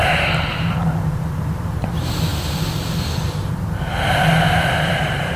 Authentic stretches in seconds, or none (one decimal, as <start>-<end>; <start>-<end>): 2.3-4.6